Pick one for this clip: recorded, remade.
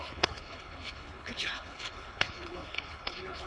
remade